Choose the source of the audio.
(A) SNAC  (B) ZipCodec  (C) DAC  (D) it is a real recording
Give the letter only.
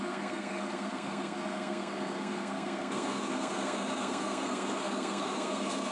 A